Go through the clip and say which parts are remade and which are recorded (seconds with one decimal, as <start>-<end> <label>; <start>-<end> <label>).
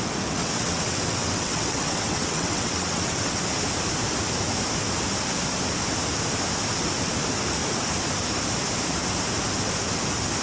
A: 0.0-0.4 recorded; 0.4-3.4 remade; 3.4-10.4 recorded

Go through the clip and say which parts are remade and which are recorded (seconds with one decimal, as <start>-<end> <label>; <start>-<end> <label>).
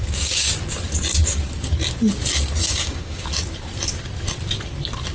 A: 0.0-0.5 remade; 0.5-2.6 recorded; 2.6-3.2 remade; 3.2-5.1 recorded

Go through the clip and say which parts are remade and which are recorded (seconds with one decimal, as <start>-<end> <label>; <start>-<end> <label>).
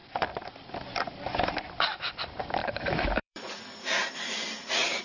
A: 0.0-1.3 remade; 1.3-2.6 recorded; 2.6-5.0 remade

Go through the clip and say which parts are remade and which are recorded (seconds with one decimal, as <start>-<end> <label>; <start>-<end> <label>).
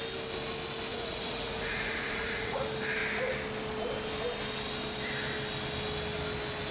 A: 0.0-0.9 recorded; 0.9-2.6 remade; 2.6-6.7 recorded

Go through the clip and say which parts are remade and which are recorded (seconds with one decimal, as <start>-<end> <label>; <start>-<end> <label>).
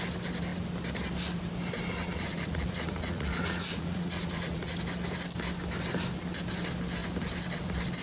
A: 0.0-2.0 recorded; 2.0-4.8 remade; 4.8-8.0 recorded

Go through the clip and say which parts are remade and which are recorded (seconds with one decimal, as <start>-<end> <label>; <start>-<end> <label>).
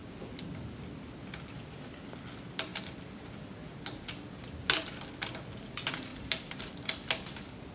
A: 0.0-7.7 recorded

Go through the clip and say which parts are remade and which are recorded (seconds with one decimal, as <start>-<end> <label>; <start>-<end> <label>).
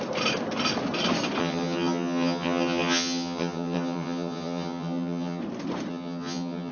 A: 0.0-1.4 recorded; 1.4-5.4 remade; 5.4-5.9 recorded; 5.9-6.7 remade